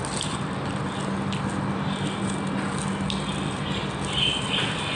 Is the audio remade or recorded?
recorded